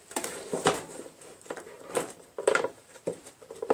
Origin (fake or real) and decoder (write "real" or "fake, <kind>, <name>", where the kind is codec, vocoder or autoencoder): fake, vocoder, BigVGAN v2